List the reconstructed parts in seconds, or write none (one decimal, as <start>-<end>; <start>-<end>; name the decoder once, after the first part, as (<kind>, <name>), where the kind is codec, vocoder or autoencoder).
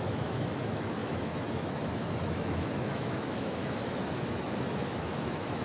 0.0-5.6 (autoencoder, DAC-VAE)